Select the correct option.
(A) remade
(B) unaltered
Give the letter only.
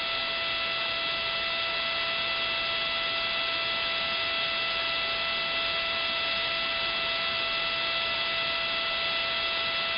B